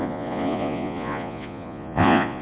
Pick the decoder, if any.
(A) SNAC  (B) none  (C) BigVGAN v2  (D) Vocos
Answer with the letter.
D